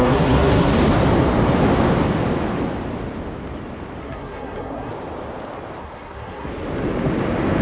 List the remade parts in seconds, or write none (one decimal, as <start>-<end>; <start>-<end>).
0.0-0.7; 4.0-4.9; 5.8-6.5